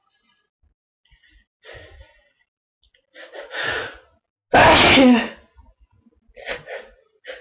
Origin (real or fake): real